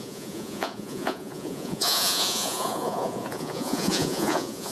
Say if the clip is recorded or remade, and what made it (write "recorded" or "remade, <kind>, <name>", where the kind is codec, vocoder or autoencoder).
remade, vocoder, Vocos